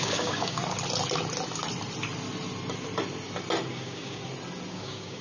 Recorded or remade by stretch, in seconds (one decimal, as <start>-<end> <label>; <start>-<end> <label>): 0.0-0.6 remade; 0.6-3.7 recorded; 3.7-4.2 remade; 4.2-4.7 recorded; 4.7-5.2 remade